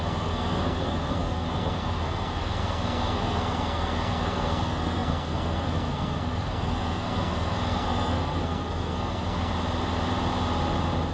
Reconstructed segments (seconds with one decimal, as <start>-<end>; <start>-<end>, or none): 0.0-9.5